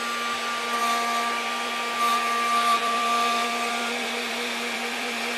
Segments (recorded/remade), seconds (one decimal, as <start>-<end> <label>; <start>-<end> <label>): 0.0-0.8 recorded; 0.8-1.7 remade; 1.7-2.1 recorded; 2.1-5.4 remade